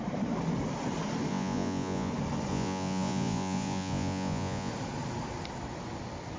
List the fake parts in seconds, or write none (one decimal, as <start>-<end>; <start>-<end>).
1.3-2.1; 2.5-4.7